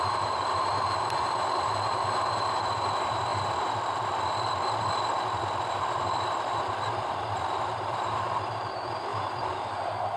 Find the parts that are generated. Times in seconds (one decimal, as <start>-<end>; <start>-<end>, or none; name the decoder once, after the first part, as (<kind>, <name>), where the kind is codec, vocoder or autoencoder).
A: 0.0-3.3 (vocoder, BigVGAN v2); 5.7-10.2